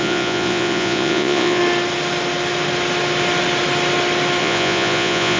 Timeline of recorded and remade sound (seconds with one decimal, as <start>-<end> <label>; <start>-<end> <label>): 0.0-1.6 remade; 1.6-4.4 recorded; 4.4-5.4 remade

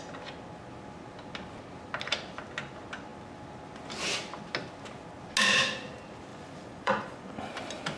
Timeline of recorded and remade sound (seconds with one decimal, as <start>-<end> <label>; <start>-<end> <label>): 0.0-6.3 recorded; 6.3-7.5 remade; 7.5-8.0 recorded

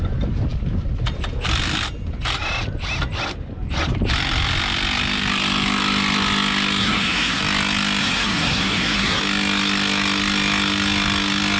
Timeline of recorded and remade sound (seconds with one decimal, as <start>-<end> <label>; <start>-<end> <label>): 0.0-6.8 recorded; 6.8-7.4 remade; 7.4-8.0 recorded; 8.0-9.2 remade; 9.2-11.6 recorded

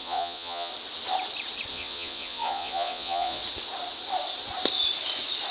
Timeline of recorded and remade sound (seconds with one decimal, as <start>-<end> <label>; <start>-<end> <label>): 0.0-0.7 remade; 0.7-1.7 recorded; 1.7-3.4 remade; 3.4-5.5 recorded

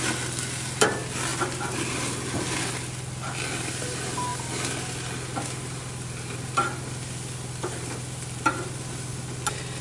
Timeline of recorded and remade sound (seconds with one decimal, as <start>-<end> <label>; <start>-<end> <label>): 0.0-9.8 recorded

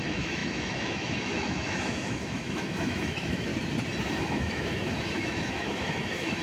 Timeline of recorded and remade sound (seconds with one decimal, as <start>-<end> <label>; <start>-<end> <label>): 0.0-3.5 remade; 3.5-4.1 recorded; 4.1-6.4 remade

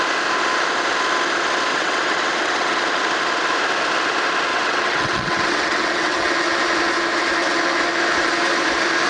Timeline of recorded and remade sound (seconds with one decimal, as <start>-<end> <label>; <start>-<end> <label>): 0.0-1.7 recorded; 1.7-2.8 remade; 2.8-4.5 recorded; 4.5-6.3 remade; 6.3-9.1 recorded